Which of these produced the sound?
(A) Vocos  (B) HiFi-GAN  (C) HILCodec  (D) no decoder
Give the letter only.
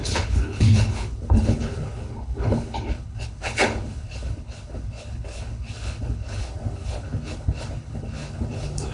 C